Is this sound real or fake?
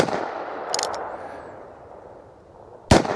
real